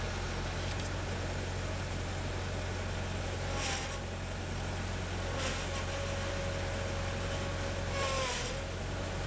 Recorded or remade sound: recorded